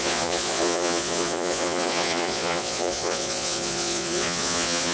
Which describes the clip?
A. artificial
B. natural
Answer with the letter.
A